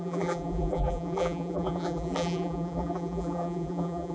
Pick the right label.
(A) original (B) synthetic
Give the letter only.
B